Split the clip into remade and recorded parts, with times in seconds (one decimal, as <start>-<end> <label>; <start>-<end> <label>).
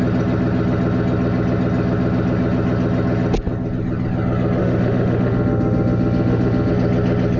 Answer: 0.0-4.6 recorded; 4.6-6.7 remade; 6.7-7.4 recorded